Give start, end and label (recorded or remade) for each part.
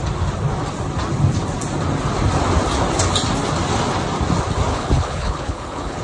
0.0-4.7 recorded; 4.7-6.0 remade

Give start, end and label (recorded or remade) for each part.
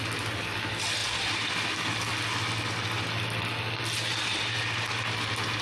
0.0-5.6 recorded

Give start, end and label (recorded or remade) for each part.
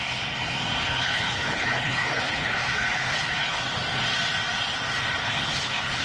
0.0-0.8 recorded; 0.8-3.6 remade; 3.6-5.2 recorded; 5.2-6.0 remade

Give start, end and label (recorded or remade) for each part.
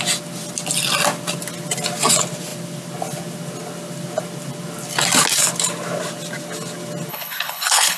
0.0-7.1 recorded; 7.1-8.0 remade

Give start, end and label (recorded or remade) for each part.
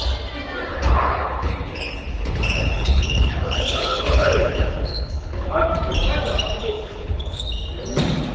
0.0-0.7 recorded; 0.7-5.7 remade; 5.7-6.6 recorded; 6.6-7.5 remade; 7.5-8.3 recorded